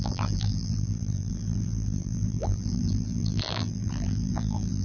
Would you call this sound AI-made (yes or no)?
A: yes